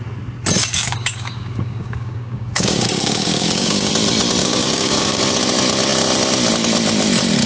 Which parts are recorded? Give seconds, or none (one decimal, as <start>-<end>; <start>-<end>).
0.0-0.6; 3.9-4.4; 5.2-7.5